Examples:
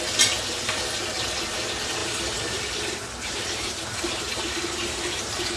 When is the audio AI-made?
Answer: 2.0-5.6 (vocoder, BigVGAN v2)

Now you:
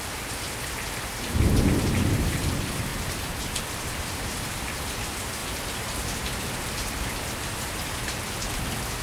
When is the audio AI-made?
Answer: 0.0-5.4 (vocoder, BigVGAN v2); 7.3-9.0